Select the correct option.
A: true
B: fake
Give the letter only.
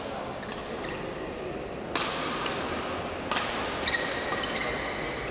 A